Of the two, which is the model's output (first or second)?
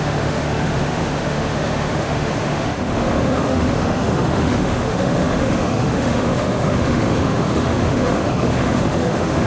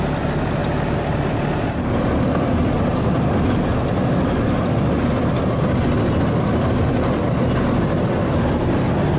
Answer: first